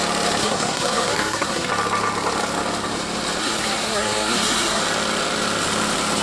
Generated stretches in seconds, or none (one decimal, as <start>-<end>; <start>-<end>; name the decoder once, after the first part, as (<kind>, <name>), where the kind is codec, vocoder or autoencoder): 0.4-1.7 (codec, SNAC); 3.4-4.8